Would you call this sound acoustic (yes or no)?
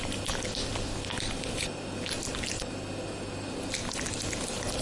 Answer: yes